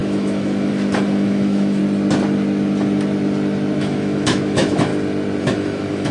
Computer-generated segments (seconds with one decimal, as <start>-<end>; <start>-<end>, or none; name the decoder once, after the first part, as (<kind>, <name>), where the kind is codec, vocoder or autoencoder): 0.0-1.8 (autoencoder, DAC-VAE); 3.8-4.9; 5.4-6.1